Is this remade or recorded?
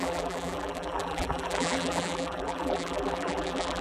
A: remade